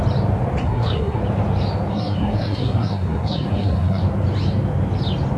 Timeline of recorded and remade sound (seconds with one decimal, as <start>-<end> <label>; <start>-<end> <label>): 0.0-0.6 recorded; 0.6-1.2 remade; 1.2-1.9 recorded; 1.9-4.0 remade; 4.0-5.4 recorded